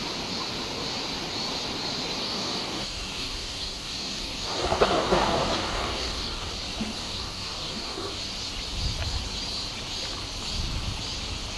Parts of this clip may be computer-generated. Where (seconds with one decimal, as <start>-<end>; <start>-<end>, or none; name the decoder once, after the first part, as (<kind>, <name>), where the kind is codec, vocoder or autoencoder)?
2.2-6.5 (codec, DAC); 7.0-8.1